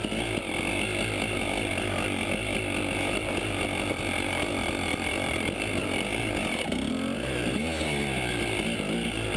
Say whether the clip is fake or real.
real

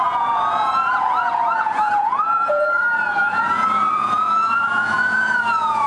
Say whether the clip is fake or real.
fake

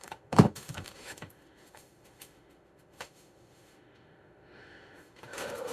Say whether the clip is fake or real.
fake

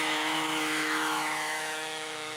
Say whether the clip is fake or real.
fake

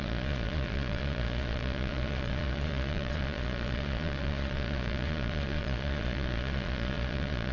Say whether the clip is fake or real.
fake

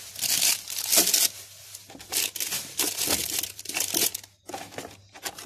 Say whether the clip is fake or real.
real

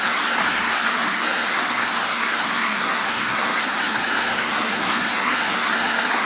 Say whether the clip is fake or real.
fake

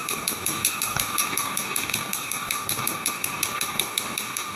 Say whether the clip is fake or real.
fake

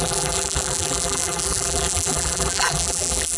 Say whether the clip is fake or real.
fake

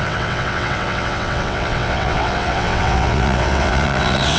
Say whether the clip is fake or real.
fake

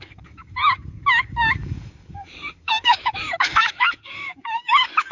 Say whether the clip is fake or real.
fake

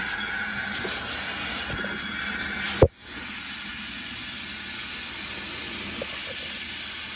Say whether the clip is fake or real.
real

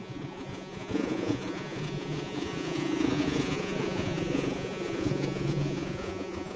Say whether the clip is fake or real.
fake